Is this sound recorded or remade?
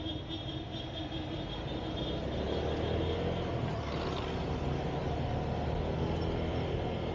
recorded